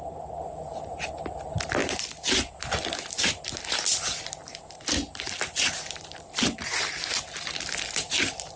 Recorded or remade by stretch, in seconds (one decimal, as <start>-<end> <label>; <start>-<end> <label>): 0.0-8.6 recorded